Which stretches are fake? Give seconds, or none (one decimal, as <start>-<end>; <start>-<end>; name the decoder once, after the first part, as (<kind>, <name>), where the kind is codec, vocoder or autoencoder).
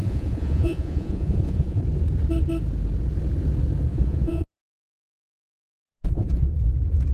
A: 0.0-1.8 (vocoder, Vocos); 3.9-5.1; 5.6-6.5